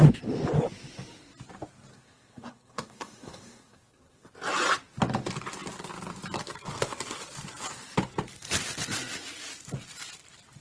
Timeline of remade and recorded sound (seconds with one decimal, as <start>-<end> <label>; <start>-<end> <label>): 0.0-1.9 recorded; 1.9-4.3 remade; 4.3-10.6 recorded